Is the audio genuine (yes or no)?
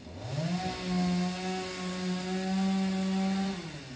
yes